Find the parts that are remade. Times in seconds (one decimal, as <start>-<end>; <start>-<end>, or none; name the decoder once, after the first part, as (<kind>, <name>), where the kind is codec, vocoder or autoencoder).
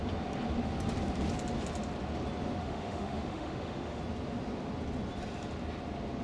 2.6-4.0 (autoencoder, DAC-VAE)